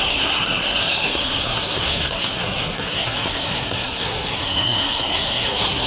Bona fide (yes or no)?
no